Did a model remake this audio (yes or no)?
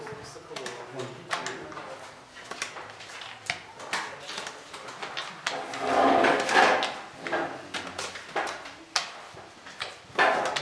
no